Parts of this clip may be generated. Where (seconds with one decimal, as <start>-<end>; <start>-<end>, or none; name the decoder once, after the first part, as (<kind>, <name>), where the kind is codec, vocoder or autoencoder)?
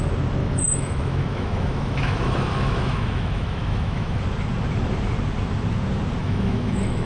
0.4-4.2 (autoencoder, DAC-VAE); 6.2-7.1